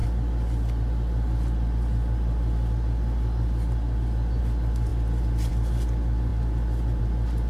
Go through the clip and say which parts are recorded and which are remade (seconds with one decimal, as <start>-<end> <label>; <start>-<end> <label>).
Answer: 0.0-7.5 recorded